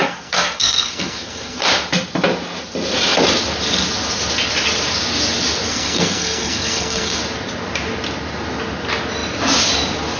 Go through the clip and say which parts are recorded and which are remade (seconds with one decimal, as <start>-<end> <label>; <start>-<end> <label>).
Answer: 0.0-1.7 remade; 1.7-5.7 recorded; 5.7-7.2 remade; 7.2-10.2 recorded